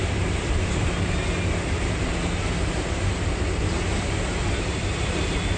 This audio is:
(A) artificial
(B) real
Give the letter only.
B